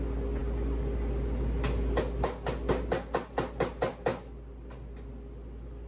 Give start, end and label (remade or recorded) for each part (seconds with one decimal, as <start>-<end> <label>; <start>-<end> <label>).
0.0-5.9 recorded